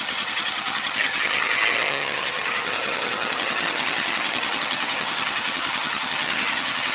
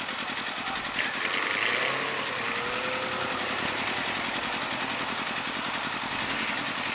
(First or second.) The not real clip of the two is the first